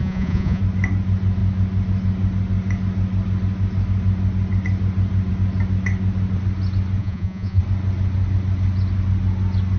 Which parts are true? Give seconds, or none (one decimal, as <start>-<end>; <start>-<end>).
0.6-7.0; 7.6-9.8